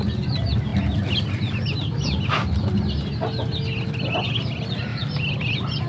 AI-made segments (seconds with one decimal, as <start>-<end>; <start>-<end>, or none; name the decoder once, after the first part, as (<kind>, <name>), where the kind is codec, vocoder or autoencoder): none